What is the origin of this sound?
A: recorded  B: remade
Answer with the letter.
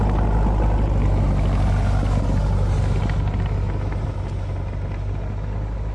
A